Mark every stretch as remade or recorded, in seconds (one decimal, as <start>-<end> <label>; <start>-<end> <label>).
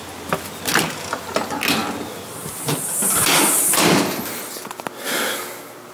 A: 0.0-5.9 recorded